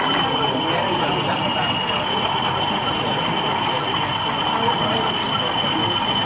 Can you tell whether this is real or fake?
real